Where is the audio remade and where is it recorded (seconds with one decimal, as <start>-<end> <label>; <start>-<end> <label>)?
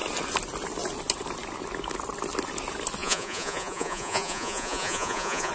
0.0-3.0 recorded; 3.0-5.5 remade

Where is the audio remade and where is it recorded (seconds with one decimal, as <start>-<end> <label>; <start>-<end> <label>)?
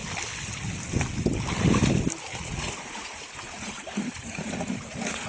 0.0-2.3 recorded; 2.3-5.3 remade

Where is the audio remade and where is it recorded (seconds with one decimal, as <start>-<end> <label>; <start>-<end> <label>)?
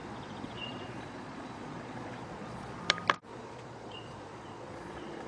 0.0-2.8 remade; 2.8-3.3 recorded; 3.3-5.3 remade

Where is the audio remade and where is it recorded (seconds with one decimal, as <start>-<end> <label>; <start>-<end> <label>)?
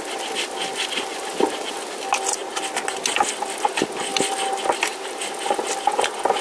0.0-6.4 recorded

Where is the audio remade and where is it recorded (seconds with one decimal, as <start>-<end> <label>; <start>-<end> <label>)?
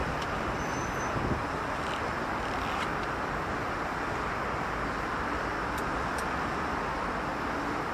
0.0-7.9 recorded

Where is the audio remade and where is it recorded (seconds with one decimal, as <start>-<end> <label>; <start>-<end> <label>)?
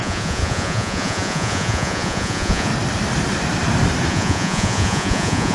0.0-2.7 remade; 2.7-4.1 recorded; 4.1-5.5 remade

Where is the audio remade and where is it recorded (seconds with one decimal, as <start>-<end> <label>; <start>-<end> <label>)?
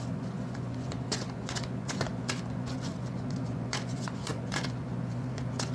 0.0-5.7 remade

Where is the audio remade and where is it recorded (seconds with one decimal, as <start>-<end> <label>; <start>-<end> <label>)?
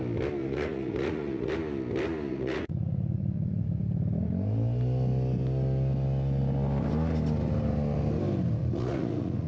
0.0-0.4 recorded; 0.4-1.5 remade; 1.5-2.3 recorded; 2.3-3.6 remade; 3.6-8.6 recorded; 8.6-9.5 remade